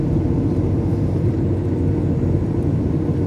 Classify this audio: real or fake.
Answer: real